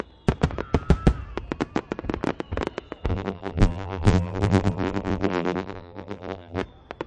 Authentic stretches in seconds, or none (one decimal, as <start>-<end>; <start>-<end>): 0.0-3.1; 6.6-7.1